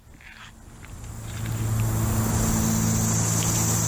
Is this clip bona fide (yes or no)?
yes